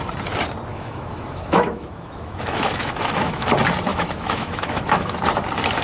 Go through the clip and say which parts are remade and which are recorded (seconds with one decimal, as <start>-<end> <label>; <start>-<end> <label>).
0.0-0.7 recorded; 0.7-3.5 remade; 3.5-3.9 recorded; 3.9-5.2 remade; 5.2-5.8 recorded